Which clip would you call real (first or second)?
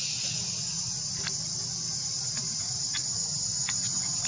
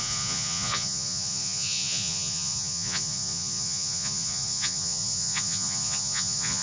first